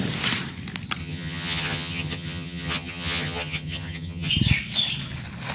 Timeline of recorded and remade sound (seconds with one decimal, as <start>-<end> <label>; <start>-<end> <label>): 0.0-1.0 recorded; 1.0-4.3 remade; 4.3-5.5 recorded